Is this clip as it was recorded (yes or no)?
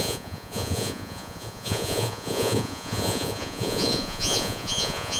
no